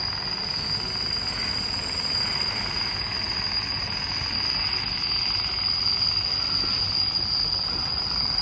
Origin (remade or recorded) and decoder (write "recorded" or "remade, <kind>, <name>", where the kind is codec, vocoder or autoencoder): recorded